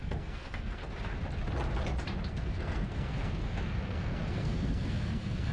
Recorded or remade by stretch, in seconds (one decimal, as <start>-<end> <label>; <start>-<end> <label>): 0.0-0.8 remade; 0.8-2.3 recorded; 2.3-5.5 remade